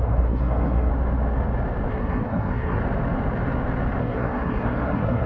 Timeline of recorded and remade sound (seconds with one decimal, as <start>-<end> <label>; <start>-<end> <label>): 0.0-0.9 remade; 0.9-1.9 recorded; 1.9-2.8 remade; 2.8-4.0 recorded; 4.0-5.3 remade

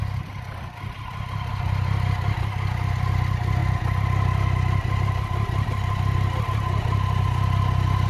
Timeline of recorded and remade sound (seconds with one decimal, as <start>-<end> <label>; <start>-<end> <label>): 0.0-8.1 recorded

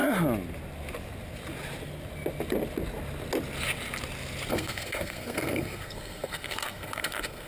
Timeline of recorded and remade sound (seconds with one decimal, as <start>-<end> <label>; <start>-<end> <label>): 0.0-4.5 recorded; 4.5-7.5 remade

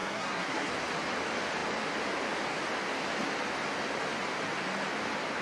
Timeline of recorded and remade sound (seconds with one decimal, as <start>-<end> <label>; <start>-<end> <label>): 0.0-0.7 remade; 0.7-5.4 recorded

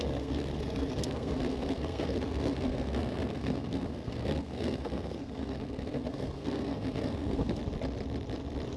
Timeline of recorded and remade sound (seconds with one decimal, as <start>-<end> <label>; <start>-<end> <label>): 0.0-7.6 remade; 7.6-8.8 recorded

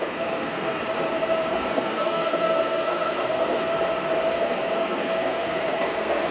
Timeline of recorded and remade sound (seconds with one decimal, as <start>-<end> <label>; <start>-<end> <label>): 0.0-0.8 remade; 0.8-1.5 recorded; 1.5-3.7 remade; 3.7-4.3 recorded; 4.3-6.3 remade